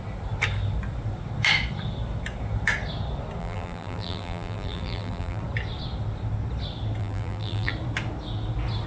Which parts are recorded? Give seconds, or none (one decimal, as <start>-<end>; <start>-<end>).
0.0-3.4; 5.4-7.0; 7.7-8.9